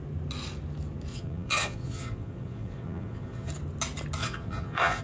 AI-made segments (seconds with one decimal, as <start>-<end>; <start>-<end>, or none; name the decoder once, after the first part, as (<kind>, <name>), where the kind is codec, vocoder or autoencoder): 1.1-3.5 (vocoder, Vocos); 4.2-5.0